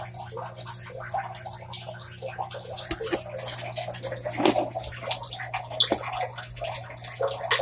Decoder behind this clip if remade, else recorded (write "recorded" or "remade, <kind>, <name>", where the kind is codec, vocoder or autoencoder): recorded